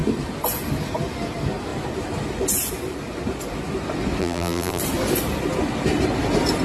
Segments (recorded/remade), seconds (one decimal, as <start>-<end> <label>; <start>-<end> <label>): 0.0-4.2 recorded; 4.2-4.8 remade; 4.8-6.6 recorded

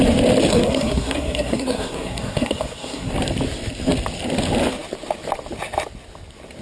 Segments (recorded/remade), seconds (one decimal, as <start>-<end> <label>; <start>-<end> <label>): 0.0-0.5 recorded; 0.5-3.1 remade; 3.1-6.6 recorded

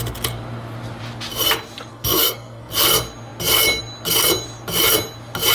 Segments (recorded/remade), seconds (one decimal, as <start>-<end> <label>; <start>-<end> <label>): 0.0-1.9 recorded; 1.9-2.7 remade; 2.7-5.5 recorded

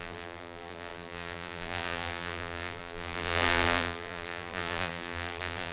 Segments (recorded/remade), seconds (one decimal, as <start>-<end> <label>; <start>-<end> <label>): 0.0-5.7 remade

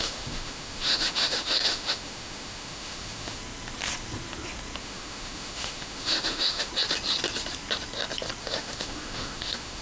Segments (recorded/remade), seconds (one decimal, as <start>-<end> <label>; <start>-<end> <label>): 0.0-3.4 remade; 3.4-4.8 recorded; 4.8-6.7 remade; 6.7-8.4 recorded; 8.4-9.8 remade

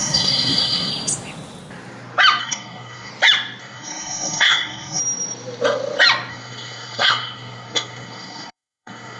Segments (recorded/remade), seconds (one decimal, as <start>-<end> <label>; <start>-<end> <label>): 0.0-0.9 remade; 0.9-2.4 recorded; 2.4-3.1 remade; 3.1-3.6 recorded; 3.6-5.0 remade; 5.0-6.3 recorded; 6.3-9.2 remade

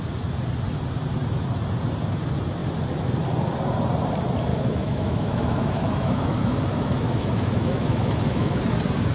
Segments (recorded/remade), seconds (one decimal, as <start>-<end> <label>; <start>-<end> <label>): 0.0-4.5 recorded; 4.5-8.6 remade; 8.6-9.1 recorded

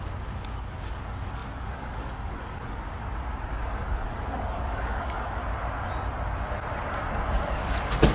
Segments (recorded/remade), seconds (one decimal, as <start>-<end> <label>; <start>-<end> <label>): 0.0-3.0 remade; 3.0-3.5 recorded; 3.5-5.4 remade; 5.4-7.1 recorded; 7.1-8.1 remade